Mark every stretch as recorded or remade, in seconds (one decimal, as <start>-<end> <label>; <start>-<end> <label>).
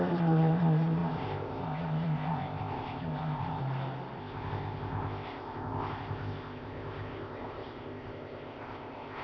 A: 0.0-3.6 remade; 3.6-4.2 recorded; 4.2-9.2 remade